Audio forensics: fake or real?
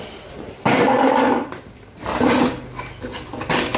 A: real